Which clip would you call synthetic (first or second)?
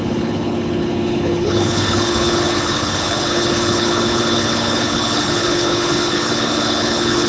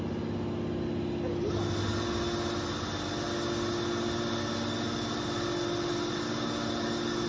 first